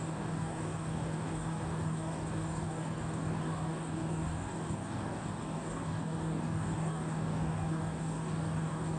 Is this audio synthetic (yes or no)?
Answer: yes